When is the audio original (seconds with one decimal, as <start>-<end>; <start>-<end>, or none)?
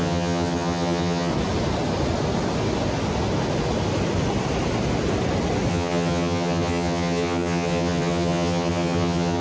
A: 1.3-5.7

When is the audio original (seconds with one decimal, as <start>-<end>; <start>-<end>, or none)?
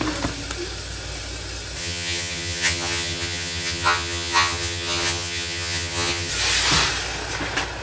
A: 0.0-1.8; 6.3-7.8